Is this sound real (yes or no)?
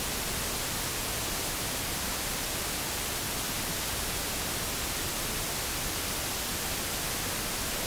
yes